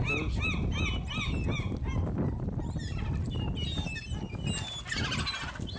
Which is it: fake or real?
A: real